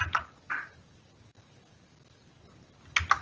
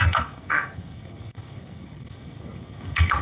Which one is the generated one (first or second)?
second